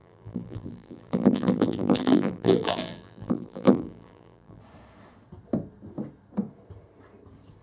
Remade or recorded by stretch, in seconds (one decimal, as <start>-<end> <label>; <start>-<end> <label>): 0.0-4.6 remade; 4.6-7.6 recorded

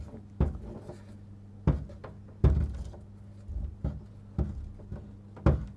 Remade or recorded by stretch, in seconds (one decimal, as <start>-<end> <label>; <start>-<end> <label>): 0.0-5.8 recorded

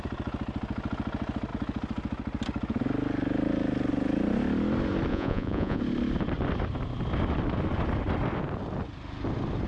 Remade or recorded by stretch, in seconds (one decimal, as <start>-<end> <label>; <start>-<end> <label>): 0.0-5.1 recorded; 5.1-5.8 remade; 5.8-9.7 recorded

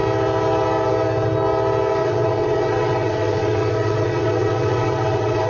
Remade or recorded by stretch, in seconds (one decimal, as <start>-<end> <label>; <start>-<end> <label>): 0.0-2.0 recorded; 2.0-5.5 remade

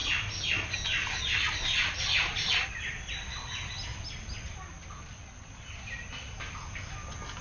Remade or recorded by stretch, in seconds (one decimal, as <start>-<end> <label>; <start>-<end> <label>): 0.0-7.4 recorded

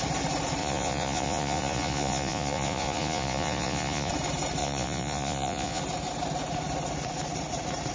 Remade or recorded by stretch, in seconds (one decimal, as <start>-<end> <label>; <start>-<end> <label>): 0.0-0.6 recorded; 0.6-4.1 remade; 4.1-4.6 recorded; 4.6-5.8 remade; 5.8-7.9 recorded